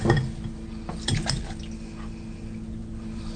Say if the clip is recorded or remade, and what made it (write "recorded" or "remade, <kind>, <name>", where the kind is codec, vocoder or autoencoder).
recorded